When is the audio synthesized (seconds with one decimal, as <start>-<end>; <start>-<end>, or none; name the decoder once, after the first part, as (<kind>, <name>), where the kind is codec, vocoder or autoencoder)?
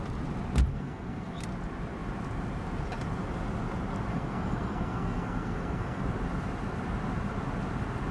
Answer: 0.7-1.4 (codec, SNAC); 4.1-6.0